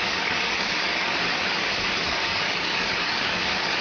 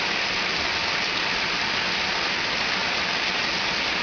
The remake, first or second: first